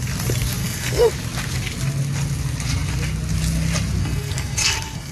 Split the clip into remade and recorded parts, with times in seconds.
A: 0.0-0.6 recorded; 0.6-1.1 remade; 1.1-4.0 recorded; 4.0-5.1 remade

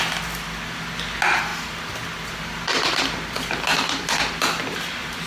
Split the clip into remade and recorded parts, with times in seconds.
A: 0.0-3.7 recorded; 3.7-5.3 remade